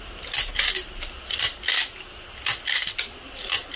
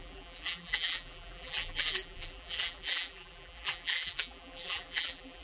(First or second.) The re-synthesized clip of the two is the second